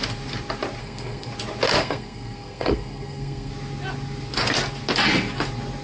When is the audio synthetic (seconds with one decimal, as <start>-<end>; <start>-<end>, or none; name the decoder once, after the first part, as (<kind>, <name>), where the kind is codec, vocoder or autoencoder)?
0.8-1.3 (codec, SNAC); 1.8-3.5